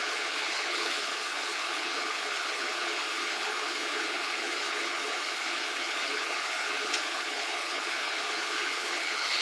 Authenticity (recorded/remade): remade